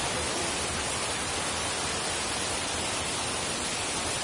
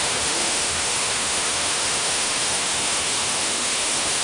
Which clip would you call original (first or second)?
first